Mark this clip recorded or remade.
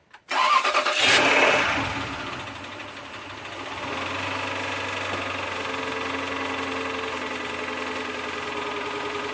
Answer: recorded